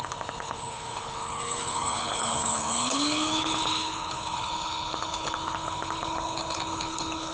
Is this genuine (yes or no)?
no